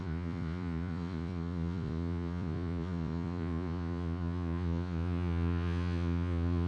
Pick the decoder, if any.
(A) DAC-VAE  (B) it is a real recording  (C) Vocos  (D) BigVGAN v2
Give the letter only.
C